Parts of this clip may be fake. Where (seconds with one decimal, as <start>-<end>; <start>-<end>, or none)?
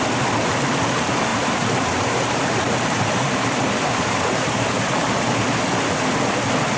1.3-5.4